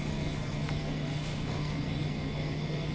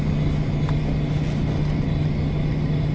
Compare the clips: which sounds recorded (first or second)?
second